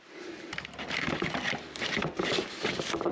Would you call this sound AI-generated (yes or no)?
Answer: no